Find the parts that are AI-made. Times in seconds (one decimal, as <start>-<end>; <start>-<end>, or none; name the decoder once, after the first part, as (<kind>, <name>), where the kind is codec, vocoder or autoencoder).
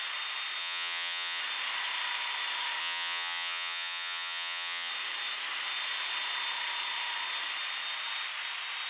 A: 0.6-1.4 (vocoder, HiFi-GAN); 2.8-4.9